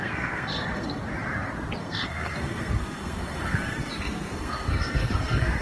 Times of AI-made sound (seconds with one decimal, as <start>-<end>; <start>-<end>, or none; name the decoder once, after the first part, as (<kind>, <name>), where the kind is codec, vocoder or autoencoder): 0.0-1.0 (codec, SNAC); 1.8-5.6